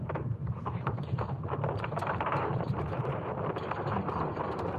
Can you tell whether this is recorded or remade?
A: remade